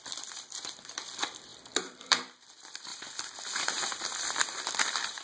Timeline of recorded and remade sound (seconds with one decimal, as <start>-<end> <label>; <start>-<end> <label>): 0.0-5.2 remade